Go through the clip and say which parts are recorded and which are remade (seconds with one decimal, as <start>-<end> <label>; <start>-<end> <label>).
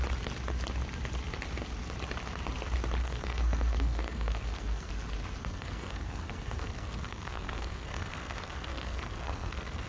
0.0-3.0 recorded; 3.0-4.9 remade; 4.9-5.4 recorded; 5.4-9.9 remade